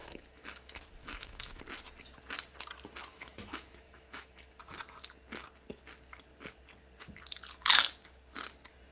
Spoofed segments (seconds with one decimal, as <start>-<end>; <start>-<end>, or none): 0.0-1.6; 3.1-4.6